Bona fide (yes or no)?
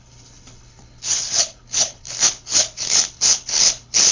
no